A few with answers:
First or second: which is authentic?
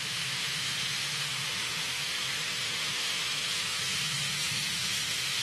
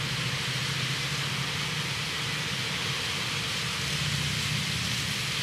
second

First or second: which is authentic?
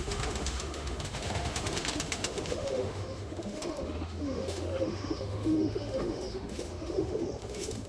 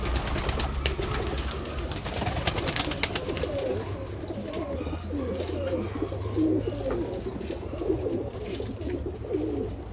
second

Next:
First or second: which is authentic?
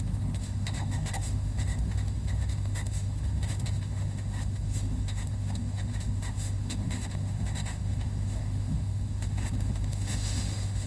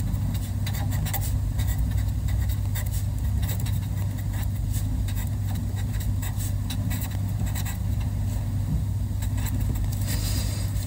second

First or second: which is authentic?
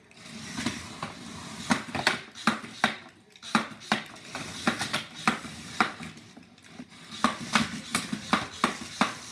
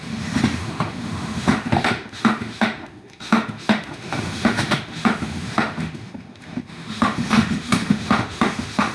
first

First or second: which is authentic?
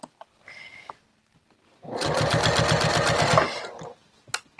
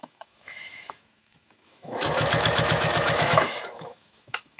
first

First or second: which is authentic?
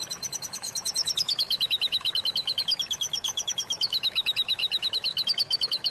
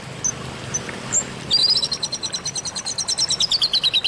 second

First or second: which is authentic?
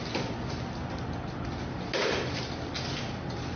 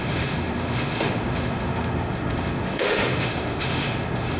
first